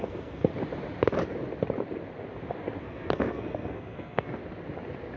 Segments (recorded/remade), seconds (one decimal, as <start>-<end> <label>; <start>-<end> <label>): 0.0-0.5 remade; 0.5-2.8 recorded; 2.8-4.4 remade; 4.4-5.2 recorded